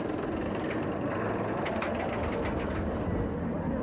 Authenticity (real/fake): real